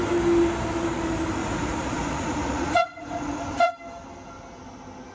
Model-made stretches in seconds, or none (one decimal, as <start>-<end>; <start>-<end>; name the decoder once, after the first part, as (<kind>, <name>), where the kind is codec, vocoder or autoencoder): 1.4-3.7 (vocoder, Vocos)